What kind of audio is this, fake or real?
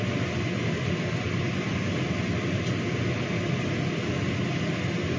real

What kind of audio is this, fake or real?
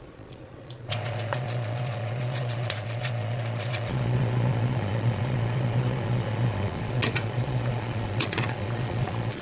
fake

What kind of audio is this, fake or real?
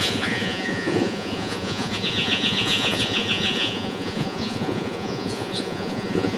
fake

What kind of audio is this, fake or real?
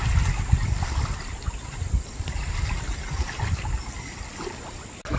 real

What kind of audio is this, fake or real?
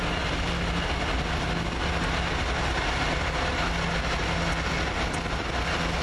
real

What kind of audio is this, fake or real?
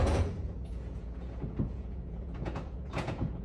fake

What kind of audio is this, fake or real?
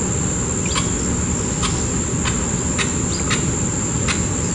real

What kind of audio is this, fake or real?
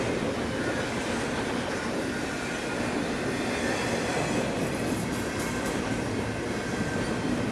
real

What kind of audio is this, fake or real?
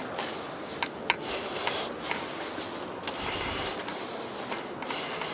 real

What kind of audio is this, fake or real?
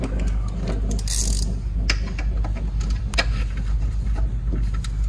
real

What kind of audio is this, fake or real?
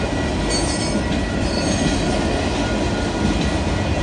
real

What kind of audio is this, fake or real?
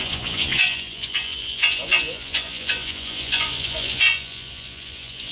fake